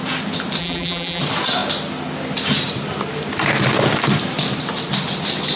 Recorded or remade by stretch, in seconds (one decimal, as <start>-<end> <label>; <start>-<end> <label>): 0.0-0.6 recorded; 0.6-1.2 remade; 1.2-5.6 recorded